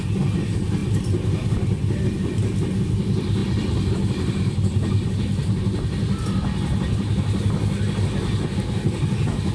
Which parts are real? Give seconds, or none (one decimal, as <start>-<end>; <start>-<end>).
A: 0.0-3.4; 3.9-9.5